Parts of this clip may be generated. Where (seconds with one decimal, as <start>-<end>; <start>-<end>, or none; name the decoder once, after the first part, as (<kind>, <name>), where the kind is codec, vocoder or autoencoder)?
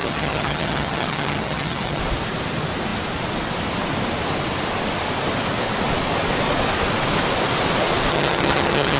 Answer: 0.0-2.0 (vocoder, HiFi-GAN); 8.1-9.0